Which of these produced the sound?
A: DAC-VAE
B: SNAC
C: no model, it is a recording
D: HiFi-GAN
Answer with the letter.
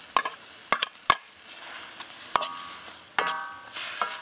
C